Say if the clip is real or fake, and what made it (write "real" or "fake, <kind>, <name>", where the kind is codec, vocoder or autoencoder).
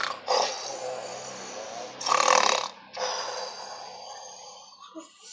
real